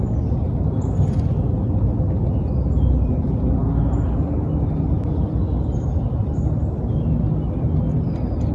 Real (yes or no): yes